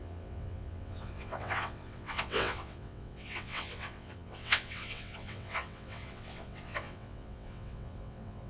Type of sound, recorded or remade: remade